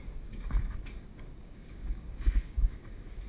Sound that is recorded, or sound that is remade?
remade